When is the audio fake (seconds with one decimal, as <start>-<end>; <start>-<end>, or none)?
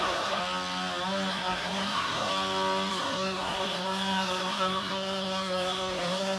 0.0-0.4; 1.3-2.3; 2.9-6.4